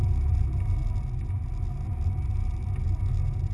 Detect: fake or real real